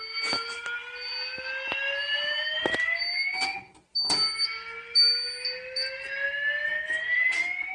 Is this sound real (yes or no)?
yes